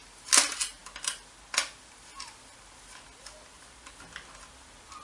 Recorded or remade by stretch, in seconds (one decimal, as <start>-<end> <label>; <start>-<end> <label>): 0.0-5.0 recorded